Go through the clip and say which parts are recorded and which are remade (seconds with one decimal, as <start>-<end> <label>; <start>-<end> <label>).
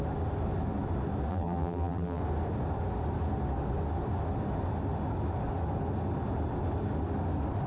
0.0-1.3 recorded; 1.3-2.2 remade; 2.2-7.7 recorded